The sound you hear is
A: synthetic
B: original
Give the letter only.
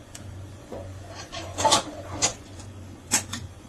A